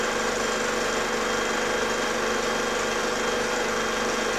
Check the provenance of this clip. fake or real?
real